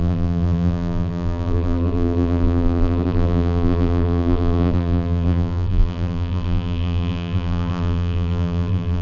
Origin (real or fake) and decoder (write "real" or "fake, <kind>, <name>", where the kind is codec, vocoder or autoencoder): fake, vocoder, BigVGAN v2